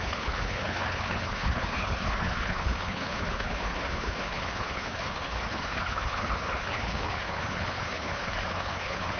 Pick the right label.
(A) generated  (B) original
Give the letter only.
A